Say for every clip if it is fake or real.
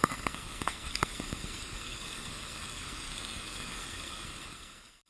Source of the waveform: fake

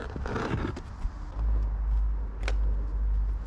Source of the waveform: real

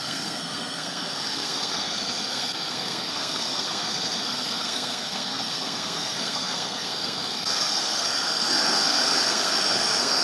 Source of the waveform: fake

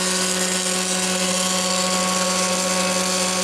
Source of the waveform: real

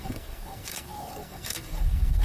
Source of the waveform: fake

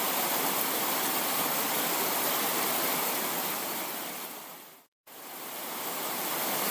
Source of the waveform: real